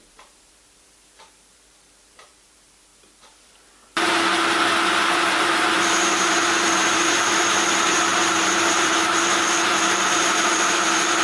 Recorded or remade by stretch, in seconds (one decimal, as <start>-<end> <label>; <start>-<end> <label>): 0.0-2.9 remade; 2.9-5.4 recorded; 5.4-11.2 remade